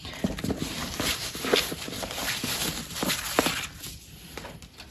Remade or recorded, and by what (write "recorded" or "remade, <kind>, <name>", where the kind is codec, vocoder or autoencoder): recorded